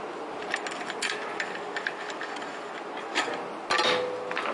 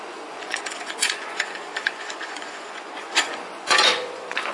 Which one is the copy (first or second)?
second